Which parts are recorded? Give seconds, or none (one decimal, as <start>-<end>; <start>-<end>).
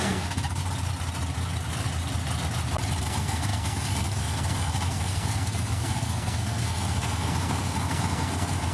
0.6-3.0